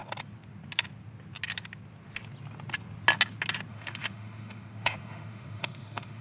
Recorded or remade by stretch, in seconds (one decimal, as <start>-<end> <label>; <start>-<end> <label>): 0.0-3.7 recorded; 3.7-6.2 remade